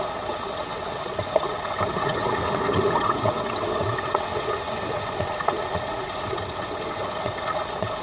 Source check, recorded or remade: remade